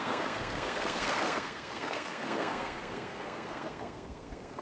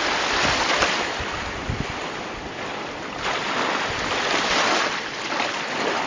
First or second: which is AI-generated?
first